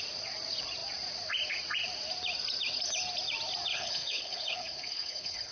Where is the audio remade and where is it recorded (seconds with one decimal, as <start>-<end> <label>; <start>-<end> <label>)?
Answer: 0.0-3.7 recorded; 3.7-5.5 remade